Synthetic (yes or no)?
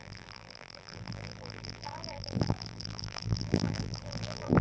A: yes